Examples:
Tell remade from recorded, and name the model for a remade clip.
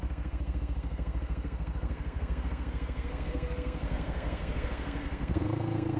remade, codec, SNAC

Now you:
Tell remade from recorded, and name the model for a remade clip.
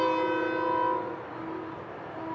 recorded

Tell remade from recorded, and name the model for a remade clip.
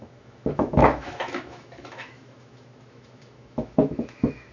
remade, autoencoder, DAC-VAE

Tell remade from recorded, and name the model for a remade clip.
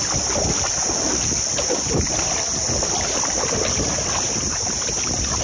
recorded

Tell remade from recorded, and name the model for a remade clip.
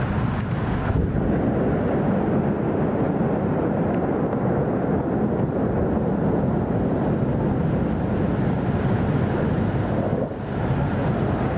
remade, vocoder, BigVGAN v2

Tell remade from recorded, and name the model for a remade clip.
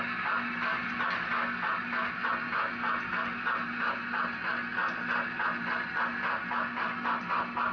recorded